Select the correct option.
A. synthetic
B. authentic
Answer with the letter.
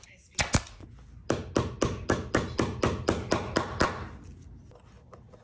B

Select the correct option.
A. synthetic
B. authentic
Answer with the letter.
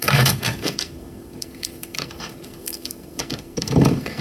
A